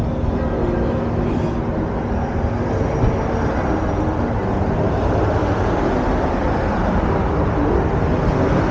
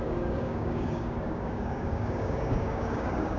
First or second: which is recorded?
first